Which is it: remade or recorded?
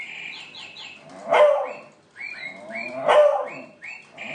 recorded